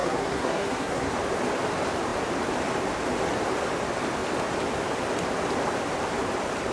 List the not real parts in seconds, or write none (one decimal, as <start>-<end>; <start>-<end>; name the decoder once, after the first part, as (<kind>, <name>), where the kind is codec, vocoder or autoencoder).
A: 0.0-1.1 (codec, SNAC)